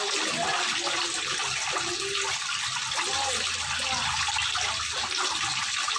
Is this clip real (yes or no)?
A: yes